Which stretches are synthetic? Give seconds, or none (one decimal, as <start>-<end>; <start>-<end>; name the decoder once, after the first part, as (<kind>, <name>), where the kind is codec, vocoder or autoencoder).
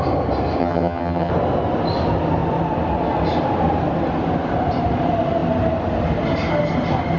0.6-1.3 (vocoder, HiFi-GAN)